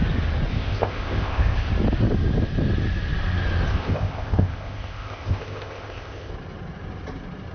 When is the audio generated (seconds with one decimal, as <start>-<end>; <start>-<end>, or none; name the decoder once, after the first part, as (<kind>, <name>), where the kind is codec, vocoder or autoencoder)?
0.5-1.7 (codec, ZipCodec); 3.7-6.3